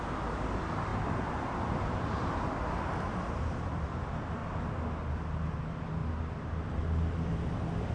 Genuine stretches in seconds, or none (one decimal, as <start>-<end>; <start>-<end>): 4.4-5.1; 6.0-7.5